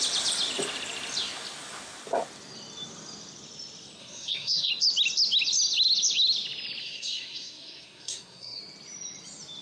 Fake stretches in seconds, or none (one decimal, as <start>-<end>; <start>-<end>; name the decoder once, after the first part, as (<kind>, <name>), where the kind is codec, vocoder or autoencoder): 4.0-4.7 (codec, SNAC); 6.8-8.6